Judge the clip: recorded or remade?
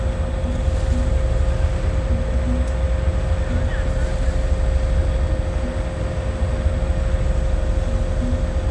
recorded